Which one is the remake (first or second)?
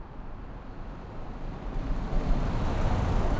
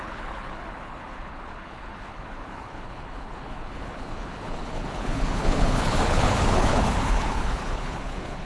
second